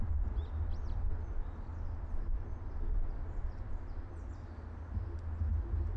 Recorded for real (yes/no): yes